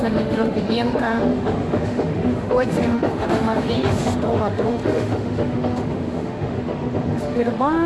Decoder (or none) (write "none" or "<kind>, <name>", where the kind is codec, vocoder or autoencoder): autoencoder, DAC-VAE